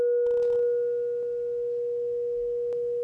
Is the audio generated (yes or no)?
no